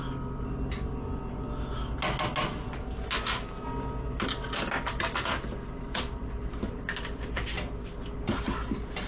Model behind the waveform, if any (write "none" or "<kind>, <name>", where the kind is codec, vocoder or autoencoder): none